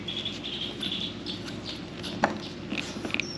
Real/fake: real